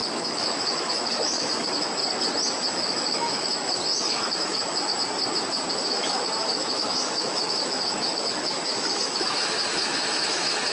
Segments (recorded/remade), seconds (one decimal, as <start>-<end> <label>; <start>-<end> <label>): 0.0-2.0 remade; 2.0-2.7 recorded; 2.7-4.9 remade; 4.9-5.7 recorded; 5.7-10.7 remade